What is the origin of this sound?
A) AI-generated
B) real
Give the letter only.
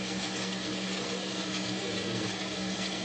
A